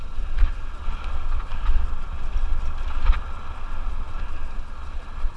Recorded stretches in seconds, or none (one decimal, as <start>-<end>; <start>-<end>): 0.0-5.4